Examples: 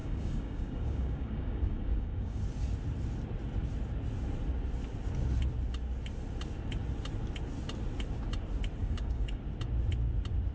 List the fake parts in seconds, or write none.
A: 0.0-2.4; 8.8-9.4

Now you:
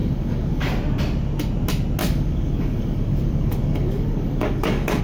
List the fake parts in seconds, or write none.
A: 0.0-0.7; 2.0-5.0

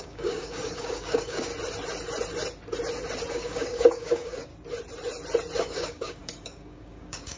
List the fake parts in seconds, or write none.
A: 0.0-1.5; 3.3-4.5; 5.6-7.4

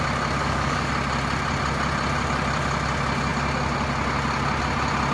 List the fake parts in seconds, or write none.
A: 0.4-0.9

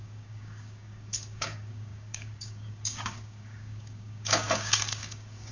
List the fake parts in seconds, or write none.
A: 0.0-5.5

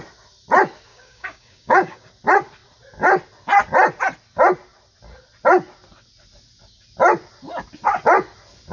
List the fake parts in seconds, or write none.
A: 0.9-2.1

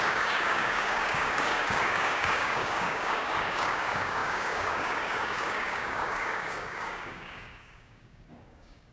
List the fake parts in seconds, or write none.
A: 0.0-8.9

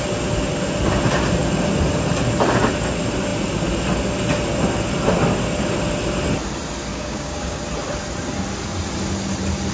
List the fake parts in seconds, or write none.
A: 6.9-7.6